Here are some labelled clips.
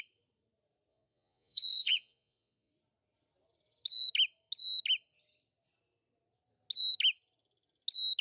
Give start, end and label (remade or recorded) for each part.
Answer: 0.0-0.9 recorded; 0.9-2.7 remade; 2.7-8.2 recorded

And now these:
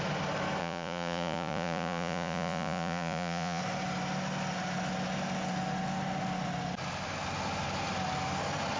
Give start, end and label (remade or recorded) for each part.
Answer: 0.0-0.6 recorded; 0.6-3.6 remade; 3.6-8.8 recorded